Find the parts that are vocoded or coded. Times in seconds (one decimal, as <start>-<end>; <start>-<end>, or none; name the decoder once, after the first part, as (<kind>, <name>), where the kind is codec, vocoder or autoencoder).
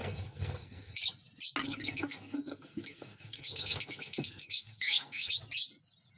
0.0-1.0 (codec, SNAC); 1.6-5.3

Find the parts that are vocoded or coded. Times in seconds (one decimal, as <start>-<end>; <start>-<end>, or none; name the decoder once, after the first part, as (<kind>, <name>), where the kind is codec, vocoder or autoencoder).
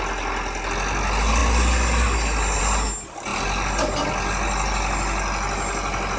none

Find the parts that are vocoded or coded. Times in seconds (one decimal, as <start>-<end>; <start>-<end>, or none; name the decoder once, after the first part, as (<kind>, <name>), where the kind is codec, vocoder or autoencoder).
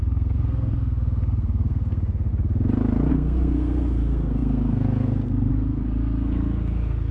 0.0-2.3 (codec, SNAC); 3.1-7.1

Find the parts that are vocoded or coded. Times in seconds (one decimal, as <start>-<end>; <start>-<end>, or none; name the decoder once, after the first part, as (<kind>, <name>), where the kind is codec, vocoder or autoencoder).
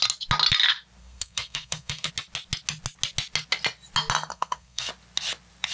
1.0-2.1 (codec, SNAC); 4.3-4.9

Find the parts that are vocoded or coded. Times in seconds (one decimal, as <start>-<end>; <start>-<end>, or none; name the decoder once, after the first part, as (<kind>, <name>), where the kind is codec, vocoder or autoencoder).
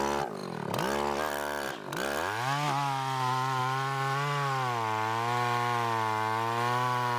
none